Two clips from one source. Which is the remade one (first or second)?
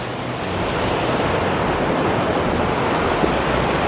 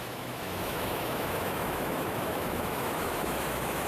second